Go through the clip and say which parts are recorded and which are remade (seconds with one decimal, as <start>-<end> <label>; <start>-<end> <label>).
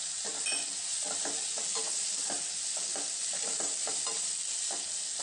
0.0-5.2 recorded